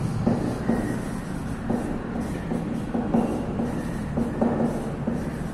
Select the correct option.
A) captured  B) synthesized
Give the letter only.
A